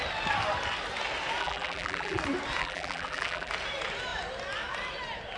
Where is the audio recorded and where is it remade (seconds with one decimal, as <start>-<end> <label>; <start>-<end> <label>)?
0.0-1.4 recorded; 1.4-2.2 remade; 2.2-2.6 recorded; 2.6-3.5 remade; 3.5-5.4 recorded

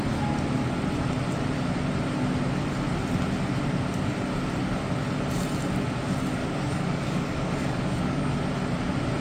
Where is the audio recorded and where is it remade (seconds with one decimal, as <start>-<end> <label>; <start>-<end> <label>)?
0.0-6.4 recorded; 6.4-8.3 remade; 8.3-9.2 recorded

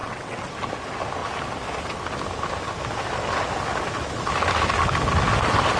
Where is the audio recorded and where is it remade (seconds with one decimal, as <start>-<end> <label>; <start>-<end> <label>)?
0.0-0.5 remade; 0.5-5.8 recorded

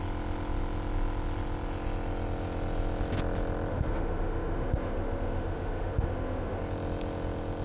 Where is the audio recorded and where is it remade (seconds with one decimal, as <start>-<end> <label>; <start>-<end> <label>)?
0.0-3.7 recorded; 3.7-6.6 remade; 6.6-7.6 recorded

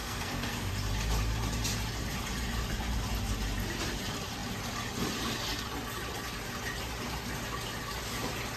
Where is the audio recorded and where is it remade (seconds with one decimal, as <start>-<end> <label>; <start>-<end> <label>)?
0.0-0.7 remade; 0.7-8.6 recorded